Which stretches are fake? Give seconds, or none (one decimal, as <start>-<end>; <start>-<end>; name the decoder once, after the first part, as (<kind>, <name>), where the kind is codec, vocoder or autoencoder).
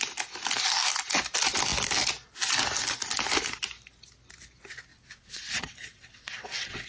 4.9-6.9 (vocoder, WaveNeXt)